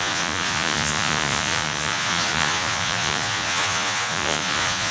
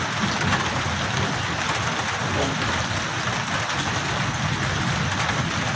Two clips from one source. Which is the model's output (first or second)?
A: first